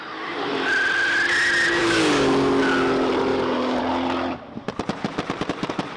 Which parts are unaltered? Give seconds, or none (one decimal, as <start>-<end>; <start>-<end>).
0.0-1.8; 2.6-3.3; 3.8-6.0